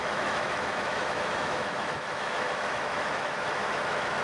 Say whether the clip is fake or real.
fake